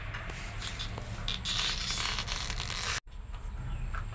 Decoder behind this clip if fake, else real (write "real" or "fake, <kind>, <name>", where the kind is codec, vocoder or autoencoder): real